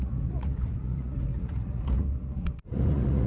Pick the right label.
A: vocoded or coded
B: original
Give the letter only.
A